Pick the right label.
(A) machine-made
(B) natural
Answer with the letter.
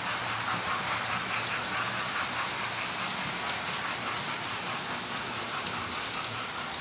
B